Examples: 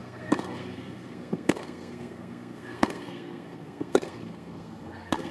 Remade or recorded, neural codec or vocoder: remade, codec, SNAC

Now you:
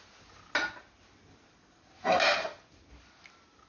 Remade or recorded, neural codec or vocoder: recorded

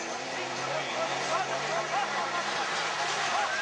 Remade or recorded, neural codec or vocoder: recorded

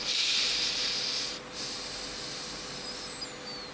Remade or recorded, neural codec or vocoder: recorded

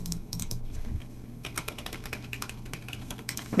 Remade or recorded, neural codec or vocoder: remade, codec, SNAC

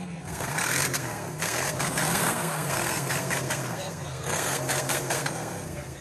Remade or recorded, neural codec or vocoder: remade, codec, SNAC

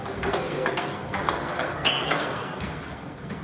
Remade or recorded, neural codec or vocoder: remade, codec, SNAC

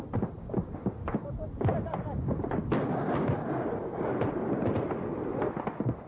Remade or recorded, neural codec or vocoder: recorded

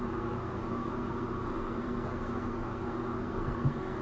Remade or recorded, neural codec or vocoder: remade, codec, SNAC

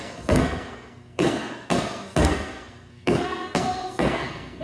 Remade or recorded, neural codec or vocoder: remade, codec, SNAC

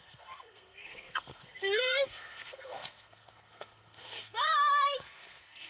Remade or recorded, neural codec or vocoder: remade, codec, SNAC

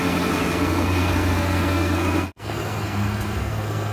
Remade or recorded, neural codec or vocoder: remade, codec, SNAC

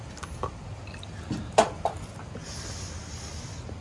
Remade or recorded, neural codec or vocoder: recorded